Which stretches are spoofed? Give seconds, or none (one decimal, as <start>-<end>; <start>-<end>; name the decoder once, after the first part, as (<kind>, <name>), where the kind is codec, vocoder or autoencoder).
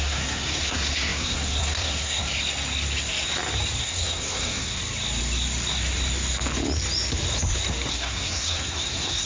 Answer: 0.0-2.2 (codec, SNAC); 3.8-4.8; 7.9-9.3